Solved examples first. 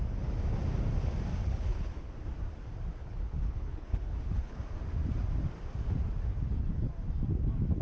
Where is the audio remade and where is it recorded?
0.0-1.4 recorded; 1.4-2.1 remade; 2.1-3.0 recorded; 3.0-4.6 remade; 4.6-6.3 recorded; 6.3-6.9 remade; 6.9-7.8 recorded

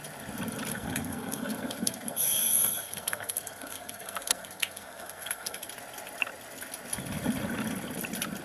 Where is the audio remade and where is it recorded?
0.0-0.7 recorded; 0.7-5.7 remade; 5.7-8.4 recorded

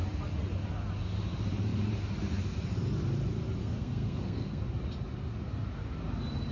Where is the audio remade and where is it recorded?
0.0-3.6 recorded; 3.6-4.6 remade; 4.6-6.5 recorded

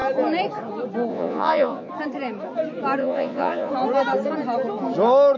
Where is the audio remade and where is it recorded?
0.0-1.1 recorded; 1.1-1.9 remade; 1.9-3.0 recorded; 3.0-3.7 remade; 3.7-5.4 recorded

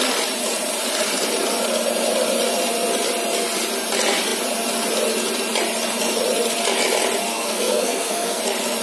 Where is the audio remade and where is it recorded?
0.0-7.3 recorded; 7.3-8.4 remade; 8.4-8.8 recorded

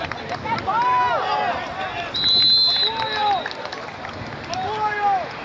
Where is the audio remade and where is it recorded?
0.0-5.4 recorded

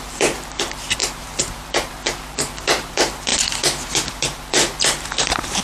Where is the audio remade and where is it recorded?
0.0-5.6 remade